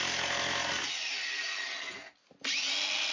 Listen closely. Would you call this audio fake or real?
real